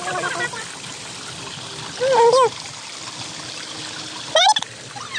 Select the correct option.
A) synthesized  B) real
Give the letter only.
B